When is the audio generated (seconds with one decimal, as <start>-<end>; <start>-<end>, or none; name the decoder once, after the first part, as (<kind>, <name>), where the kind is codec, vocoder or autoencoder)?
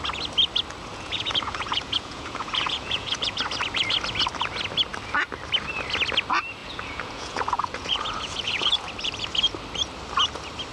0.9-3.4 (vocoder, Vocos); 6.6-8.9